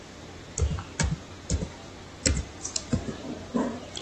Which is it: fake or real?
fake